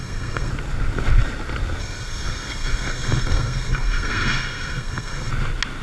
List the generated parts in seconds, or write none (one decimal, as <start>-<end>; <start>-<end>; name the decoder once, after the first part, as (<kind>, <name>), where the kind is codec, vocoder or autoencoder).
0.0-0.5 (codec, SNAC); 1.8-5.3